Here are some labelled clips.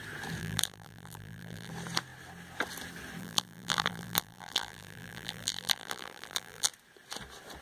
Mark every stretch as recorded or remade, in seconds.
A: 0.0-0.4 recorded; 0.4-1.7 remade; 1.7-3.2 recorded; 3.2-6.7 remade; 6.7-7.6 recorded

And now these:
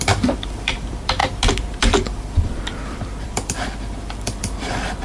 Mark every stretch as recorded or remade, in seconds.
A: 0.0-1.2 remade; 1.2-1.8 recorded; 1.8-5.0 remade